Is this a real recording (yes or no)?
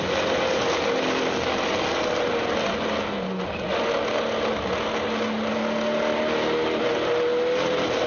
yes